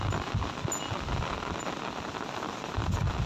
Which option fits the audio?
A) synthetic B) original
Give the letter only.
B